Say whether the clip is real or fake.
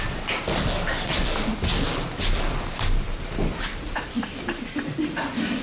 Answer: real